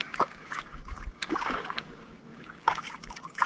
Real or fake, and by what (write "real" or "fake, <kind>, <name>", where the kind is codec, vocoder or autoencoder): fake, codec, DAC